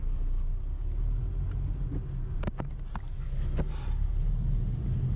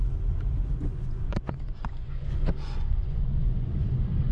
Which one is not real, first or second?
second